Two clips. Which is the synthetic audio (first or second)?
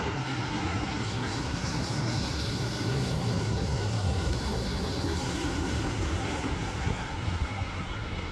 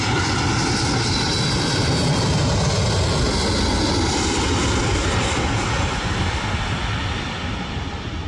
first